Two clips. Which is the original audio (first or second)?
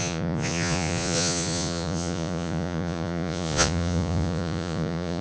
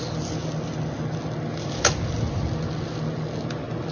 second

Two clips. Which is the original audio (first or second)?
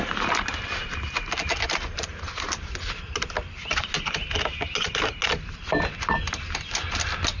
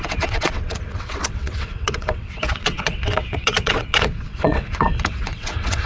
first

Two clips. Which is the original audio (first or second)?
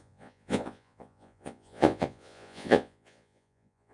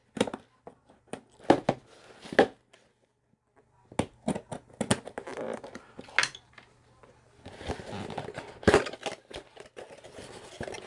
second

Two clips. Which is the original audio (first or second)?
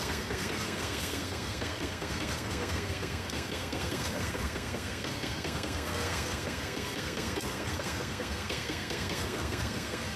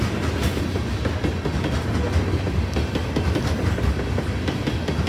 second